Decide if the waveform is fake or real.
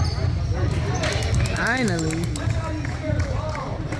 real